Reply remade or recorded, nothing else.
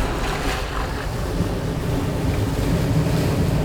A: recorded